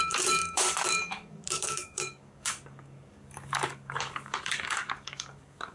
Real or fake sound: fake